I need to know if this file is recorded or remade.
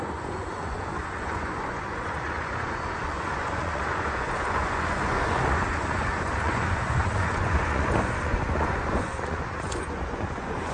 remade